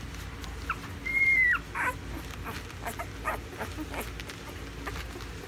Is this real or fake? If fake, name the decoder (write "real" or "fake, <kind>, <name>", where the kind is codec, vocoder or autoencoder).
real